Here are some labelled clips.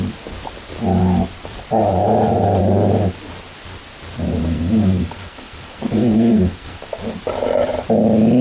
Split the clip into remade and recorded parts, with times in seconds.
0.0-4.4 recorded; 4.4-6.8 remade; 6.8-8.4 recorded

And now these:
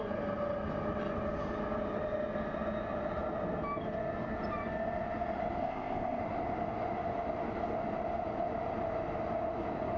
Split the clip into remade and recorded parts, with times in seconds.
0.0-5.6 recorded; 5.6-6.2 remade; 6.2-10.0 recorded

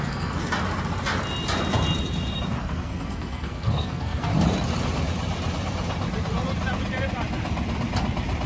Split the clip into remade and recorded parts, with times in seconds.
0.0-0.4 remade; 0.4-2.6 recorded; 2.6-4.3 remade; 4.3-8.5 recorded

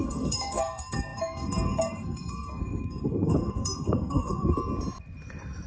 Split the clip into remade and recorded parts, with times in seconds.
0.0-4.7 remade; 4.7-5.7 recorded

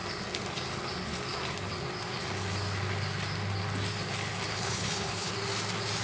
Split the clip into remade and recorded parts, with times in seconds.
0.0-4.5 recorded; 4.5-5.3 remade; 5.3-6.0 recorded

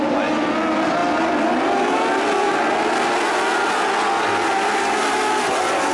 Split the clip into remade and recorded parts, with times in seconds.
0.0-1.0 recorded; 1.0-2.5 remade; 2.5-5.9 recorded